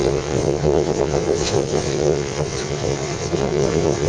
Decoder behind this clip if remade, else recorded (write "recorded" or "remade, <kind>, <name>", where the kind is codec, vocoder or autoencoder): remade, vocoder, WaveNeXt